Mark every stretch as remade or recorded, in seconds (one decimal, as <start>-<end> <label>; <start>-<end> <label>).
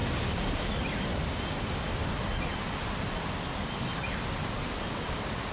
0.0-5.5 recorded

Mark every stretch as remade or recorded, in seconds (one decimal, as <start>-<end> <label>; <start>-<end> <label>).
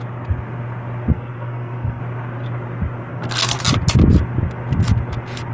0.0-1.1 recorded; 1.1-2.0 remade; 2.0-3.1 recorded; 3.1-3.6 remade; 3.6-5.5 recorded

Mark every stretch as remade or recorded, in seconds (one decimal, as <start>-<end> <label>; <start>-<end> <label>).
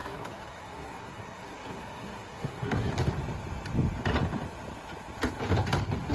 0.0-2.9 remade; 2.9-6.1 recorded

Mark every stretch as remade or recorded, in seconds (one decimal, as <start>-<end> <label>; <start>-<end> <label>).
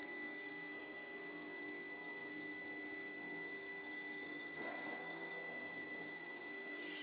0.0-7.0 remade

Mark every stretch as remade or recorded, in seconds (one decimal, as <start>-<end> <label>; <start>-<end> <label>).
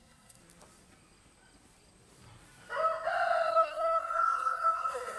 0.0-0.4 remade; 0.4-3.5 recorded; 3.5-5.2 remade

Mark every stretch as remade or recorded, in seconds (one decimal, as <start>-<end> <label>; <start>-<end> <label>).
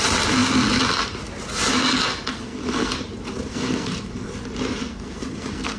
0.0-2.3 recorded; 2.3-2.9 remade; 2.9-3.5 recorded; 3.5-4.3 remade; 4.3-4.8 recorded; 4.8-5.8 remade